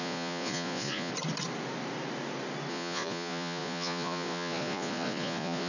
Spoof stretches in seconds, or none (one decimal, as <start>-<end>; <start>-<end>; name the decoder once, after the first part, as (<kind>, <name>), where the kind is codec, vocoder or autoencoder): 0.0-1.1 (vocoder, Vocos); 2.7-5.7

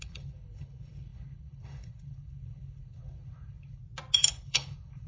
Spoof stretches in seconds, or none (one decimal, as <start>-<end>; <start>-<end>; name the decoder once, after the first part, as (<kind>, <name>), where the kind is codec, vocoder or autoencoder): 0.0-3.8 (codec, HILCodec); 4.3-5.1

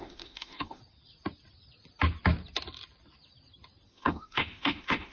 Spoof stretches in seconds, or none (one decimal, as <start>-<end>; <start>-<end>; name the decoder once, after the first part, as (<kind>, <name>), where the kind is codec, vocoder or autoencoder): 0.0-0.8 (autoencoder, DAC-VAE); 3.9-5.1